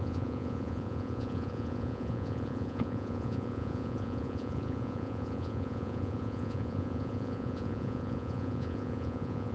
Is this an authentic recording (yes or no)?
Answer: no